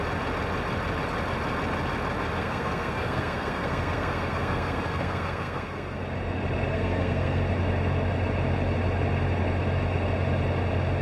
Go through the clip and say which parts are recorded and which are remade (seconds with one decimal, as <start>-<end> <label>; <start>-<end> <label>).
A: 0.0-2.4 recorded; 2.4-6.0 remade; 6.0-6.7 recorded; 6.7-7.4 remade; 7.4-11.0 recorded